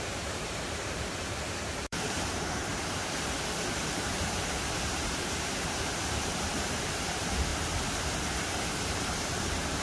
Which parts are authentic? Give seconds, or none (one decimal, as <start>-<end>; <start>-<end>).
2.7-3.8; 7.5-8.7